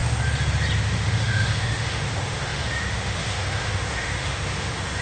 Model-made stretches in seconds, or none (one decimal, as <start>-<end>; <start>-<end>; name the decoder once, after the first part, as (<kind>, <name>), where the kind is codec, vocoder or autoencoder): 0.8-5.0 (autoencoder, DAC-VAE)